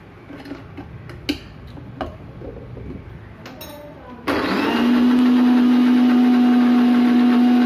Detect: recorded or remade recorded